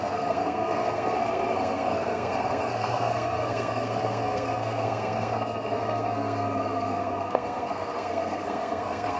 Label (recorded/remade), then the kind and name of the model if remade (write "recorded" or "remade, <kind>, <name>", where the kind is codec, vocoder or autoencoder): remade, codec, SNAC